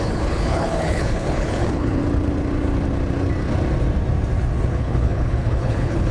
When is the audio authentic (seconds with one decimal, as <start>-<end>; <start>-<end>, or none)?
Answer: 2.0-4.7